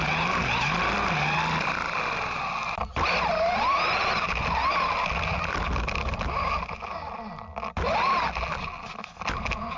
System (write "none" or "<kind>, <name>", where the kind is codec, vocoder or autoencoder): none